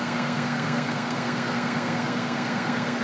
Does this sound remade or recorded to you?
remade